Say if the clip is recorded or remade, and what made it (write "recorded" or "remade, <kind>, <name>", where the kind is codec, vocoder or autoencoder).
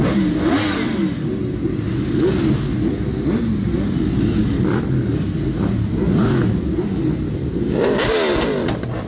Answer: recorded